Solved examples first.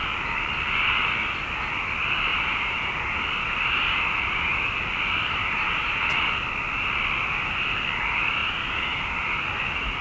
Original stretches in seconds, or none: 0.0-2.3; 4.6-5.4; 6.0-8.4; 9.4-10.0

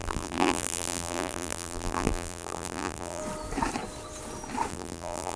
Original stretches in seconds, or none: 3.2-4.7

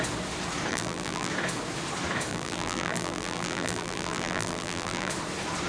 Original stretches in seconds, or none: 0.0-0.7; 1.3-2.3; 5.1-5.7

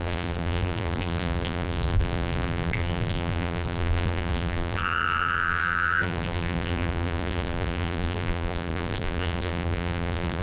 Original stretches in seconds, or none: none

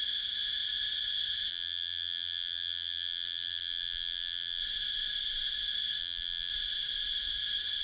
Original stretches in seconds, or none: 0.0-1.5; 4.6-6.0; 6.5-7.8